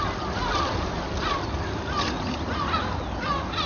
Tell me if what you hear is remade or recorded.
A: recorded